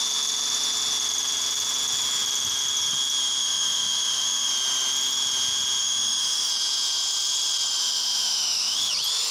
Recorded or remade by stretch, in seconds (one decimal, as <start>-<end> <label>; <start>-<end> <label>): 0.0-3.4 recorded; 3.4-4.5 remade; 4.5-5.8 recorded; 5.8-6.5 remade; 6.5-7.8 recorded; 7.8-8.9 remade; 8.9-9.3 recorded